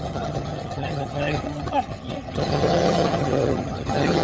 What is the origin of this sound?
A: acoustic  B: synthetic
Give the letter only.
B